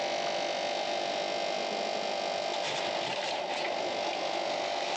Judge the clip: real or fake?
real